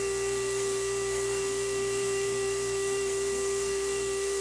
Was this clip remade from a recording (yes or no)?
yes